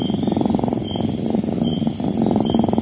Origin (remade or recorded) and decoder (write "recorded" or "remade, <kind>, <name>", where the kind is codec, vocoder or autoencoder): recorded